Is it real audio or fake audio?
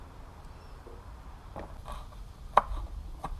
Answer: real